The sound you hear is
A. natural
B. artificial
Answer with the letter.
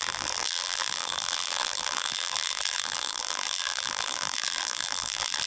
B